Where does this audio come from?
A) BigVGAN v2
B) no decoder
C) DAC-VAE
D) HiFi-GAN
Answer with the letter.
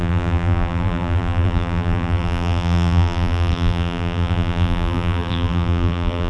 A